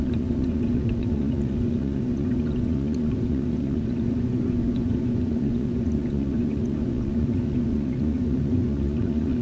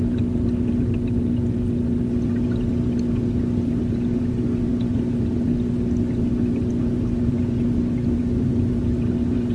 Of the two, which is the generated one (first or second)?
first